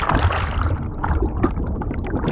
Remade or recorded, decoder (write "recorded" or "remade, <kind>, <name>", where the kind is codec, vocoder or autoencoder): recorded